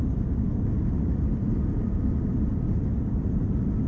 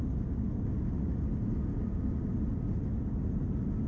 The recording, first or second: second